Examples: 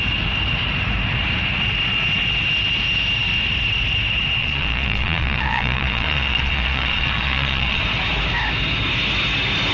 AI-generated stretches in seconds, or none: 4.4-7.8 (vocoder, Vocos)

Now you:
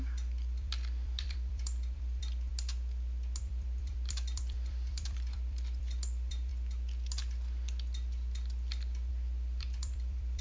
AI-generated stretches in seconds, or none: 0.0-2.5 (vocoder, BigVGAN v2); 3.4-6.5; 9.1-10.4

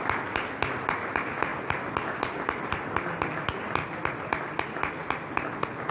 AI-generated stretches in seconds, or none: 0.0-1.5 (vocoder, BigVGAN v2); 2.6-5.9

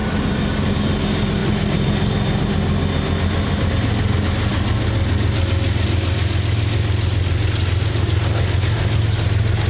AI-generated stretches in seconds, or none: none

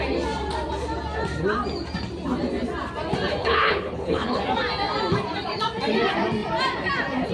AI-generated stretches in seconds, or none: 3.4-4.4 (codec, HILCodec)